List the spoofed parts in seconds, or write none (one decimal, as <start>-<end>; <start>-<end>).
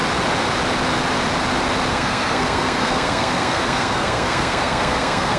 1.9-5.4